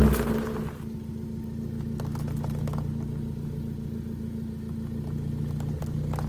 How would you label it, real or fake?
real